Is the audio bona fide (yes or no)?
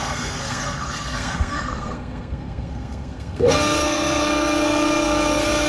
no